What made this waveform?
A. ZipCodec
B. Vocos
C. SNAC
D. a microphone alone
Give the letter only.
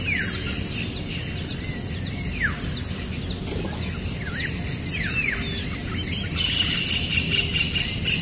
D